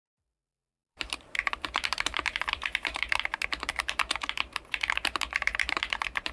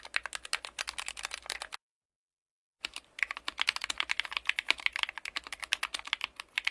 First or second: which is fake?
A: first